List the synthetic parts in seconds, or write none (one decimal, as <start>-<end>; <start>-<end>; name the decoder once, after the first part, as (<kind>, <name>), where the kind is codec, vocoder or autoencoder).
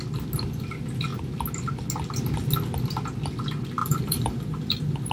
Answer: 3.8-5.1 (vocoder, BigVGAN v2)